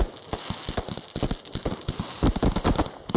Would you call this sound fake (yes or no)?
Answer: no